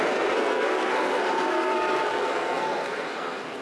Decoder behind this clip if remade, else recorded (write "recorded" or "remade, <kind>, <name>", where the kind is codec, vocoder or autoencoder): remade, codec, SNAC